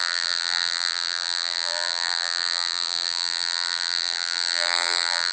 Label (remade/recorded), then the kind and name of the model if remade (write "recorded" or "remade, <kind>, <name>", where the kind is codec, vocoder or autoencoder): remade, vocoder, BigVGAN v2